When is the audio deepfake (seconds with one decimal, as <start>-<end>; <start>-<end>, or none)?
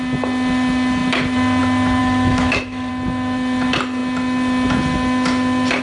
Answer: 2.0-2.9